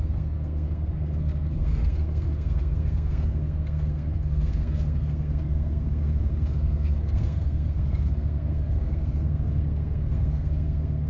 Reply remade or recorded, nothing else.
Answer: remade